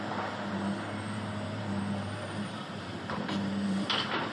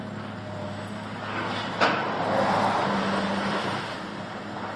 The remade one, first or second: first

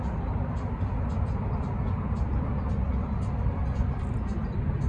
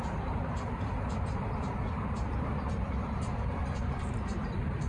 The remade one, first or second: second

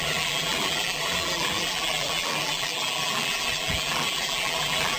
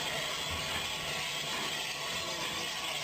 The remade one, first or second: first